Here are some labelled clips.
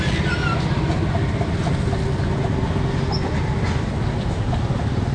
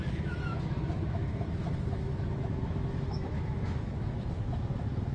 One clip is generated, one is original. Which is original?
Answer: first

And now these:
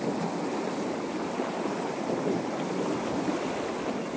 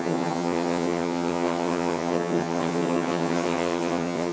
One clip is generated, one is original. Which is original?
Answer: first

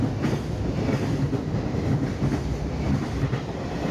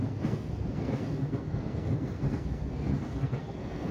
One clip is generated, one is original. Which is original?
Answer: first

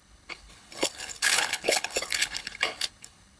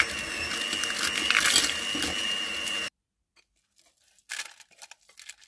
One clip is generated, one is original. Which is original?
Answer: second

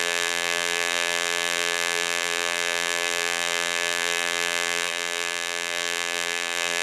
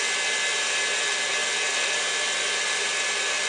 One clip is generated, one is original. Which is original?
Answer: second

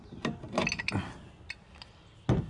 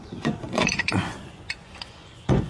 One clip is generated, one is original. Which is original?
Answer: first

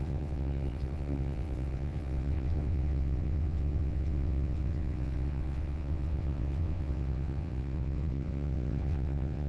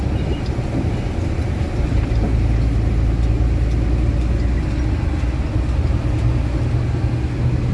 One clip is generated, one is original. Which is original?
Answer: second